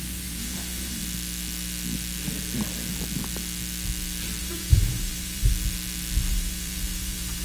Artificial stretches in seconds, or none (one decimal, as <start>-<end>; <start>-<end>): 0.0-1.0; 4.4-5.5; 6.3-7.4